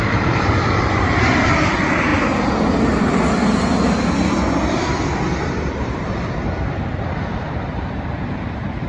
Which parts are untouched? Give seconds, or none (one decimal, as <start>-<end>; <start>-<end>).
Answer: 2.1-7.0